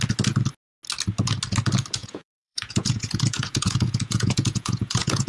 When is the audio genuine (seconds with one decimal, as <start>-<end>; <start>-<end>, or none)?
0.0-2.0